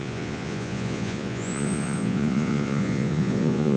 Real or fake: fake